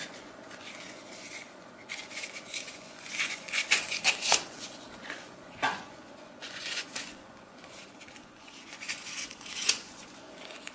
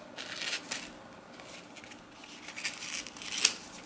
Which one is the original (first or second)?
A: second